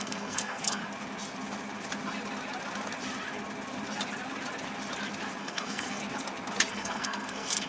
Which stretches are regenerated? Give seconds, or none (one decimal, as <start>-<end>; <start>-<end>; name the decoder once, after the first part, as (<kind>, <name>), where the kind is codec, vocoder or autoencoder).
0.0-0.8 (codec, SNAC); 5.4-6.0; 6.7-7.7